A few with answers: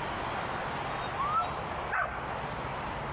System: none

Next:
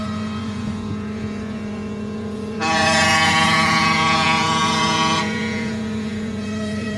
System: vocoder, Vocos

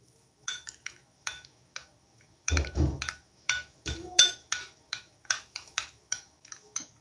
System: autoencoder, DAC-VAE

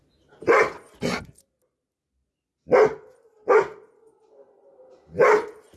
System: none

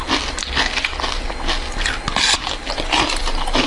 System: none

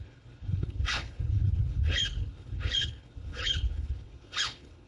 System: codec, HILCodec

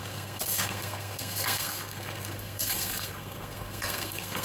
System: codec, SNAC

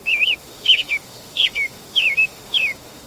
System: autoencoder, DAC-VAE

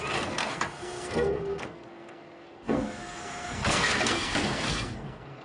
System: codec, SNAC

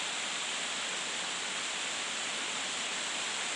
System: none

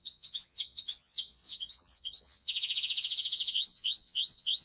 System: vocoder, Vocos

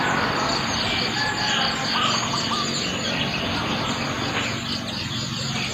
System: none